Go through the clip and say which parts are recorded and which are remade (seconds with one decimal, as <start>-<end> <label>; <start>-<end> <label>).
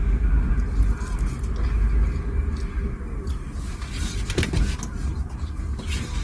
0.0-6.2 recorded